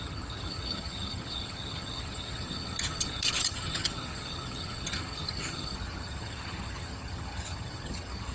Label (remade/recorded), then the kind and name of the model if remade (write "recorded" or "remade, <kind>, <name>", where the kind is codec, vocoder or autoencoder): remade, vocoder, HiFi-GAN